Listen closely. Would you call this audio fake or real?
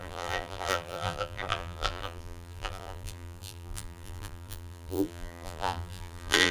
fake